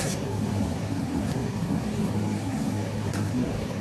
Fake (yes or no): yes